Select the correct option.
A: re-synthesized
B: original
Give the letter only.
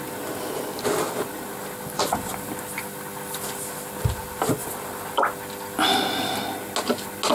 B